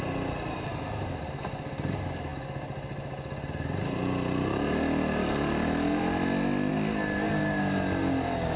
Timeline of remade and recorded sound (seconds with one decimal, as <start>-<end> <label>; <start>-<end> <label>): 0.0-8.6 recorded